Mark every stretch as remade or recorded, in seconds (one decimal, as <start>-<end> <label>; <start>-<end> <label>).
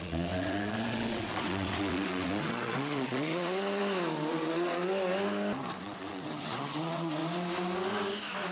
0.0-3.8 remade; 3.8-4.3 recorded; 4.3-4.8 remade; 4.8-5.8 recorded; 5.8-7.2 remade; 7.2-8.5 recorded